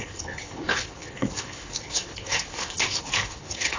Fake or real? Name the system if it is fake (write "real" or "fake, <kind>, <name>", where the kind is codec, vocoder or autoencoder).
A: fake, codec, HILCodec